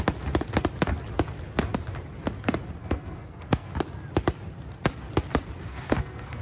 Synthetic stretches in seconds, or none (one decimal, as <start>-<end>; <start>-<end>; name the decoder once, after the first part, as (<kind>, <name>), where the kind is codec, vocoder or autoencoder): 2.8-3.7 (codec, SNAC); 5.7-6.4